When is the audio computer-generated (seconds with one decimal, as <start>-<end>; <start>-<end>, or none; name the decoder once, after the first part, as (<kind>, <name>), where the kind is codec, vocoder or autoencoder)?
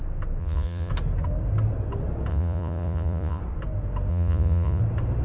0.4-0.9 (vocoder, Vocos); 2.3-3.4; 4.1-4.8